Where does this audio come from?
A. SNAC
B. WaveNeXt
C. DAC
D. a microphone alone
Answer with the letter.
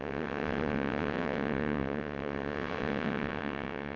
B